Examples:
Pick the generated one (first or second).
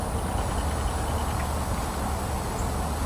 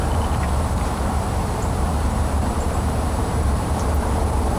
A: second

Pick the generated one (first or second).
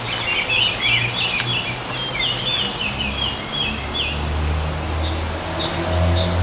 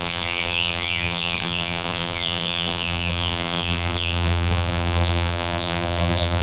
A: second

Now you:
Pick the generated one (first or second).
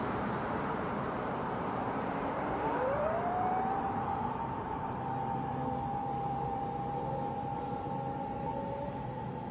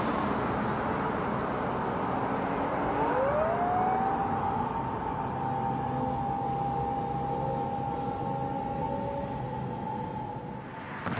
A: first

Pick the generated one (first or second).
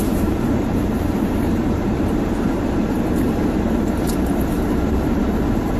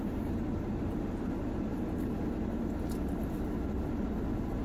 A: first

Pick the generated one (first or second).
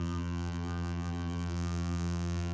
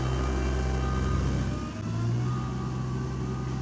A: first